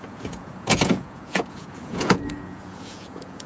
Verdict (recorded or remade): remade